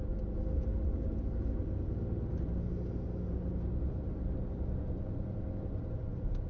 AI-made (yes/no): no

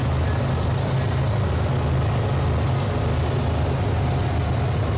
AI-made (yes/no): no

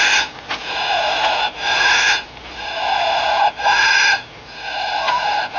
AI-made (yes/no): no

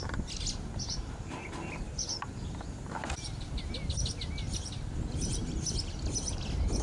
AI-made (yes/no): no